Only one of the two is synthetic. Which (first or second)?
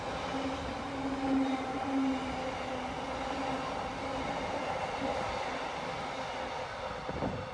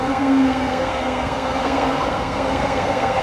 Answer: second